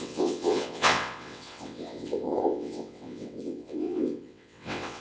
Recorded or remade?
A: remade